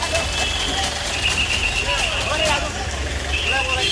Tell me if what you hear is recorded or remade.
recorded